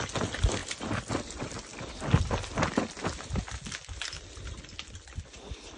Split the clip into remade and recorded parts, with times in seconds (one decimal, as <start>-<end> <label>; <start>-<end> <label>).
0.0-5.8 recorded